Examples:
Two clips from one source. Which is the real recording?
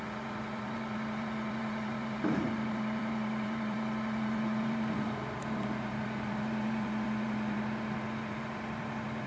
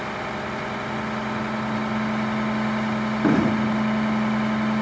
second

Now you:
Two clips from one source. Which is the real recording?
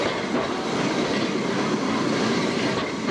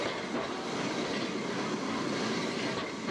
second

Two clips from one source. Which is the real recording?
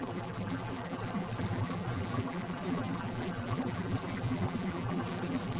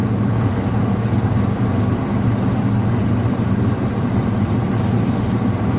second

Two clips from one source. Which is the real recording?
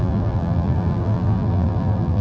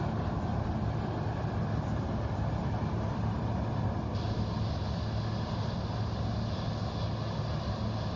second